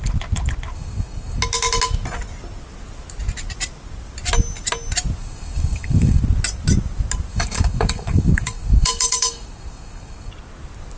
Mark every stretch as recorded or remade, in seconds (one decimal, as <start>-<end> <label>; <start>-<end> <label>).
0.0-0.7 recorded; 0.7-1.4 remade; 1.4-5.2 recorded; 5.2-6.2 remade; 6.2-7.3 recorded; 7.3-10.3 remade; 10.3-11.0 recorded